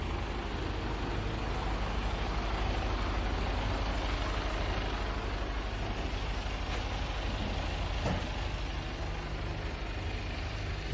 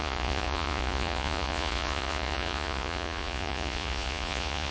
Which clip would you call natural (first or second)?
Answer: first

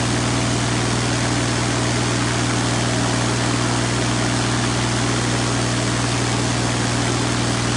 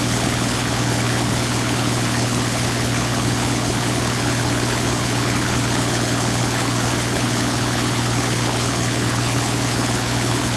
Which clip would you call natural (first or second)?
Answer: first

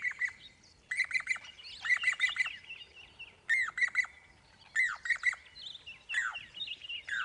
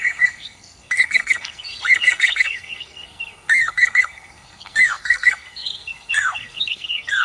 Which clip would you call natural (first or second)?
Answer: first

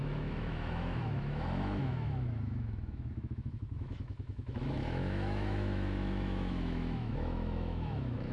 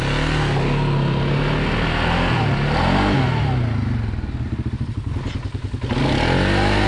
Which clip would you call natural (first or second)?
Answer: second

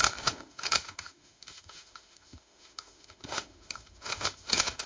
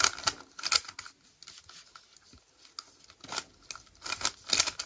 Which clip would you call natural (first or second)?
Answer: second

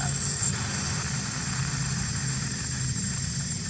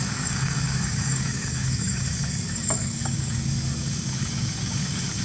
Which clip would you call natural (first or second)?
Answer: first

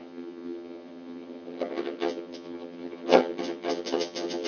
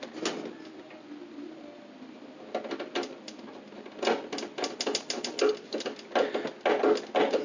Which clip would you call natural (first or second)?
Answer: second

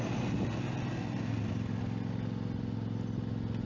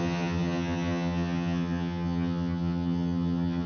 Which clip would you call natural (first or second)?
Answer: first